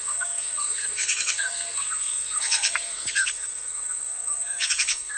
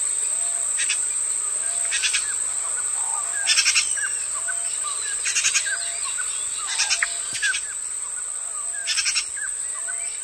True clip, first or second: second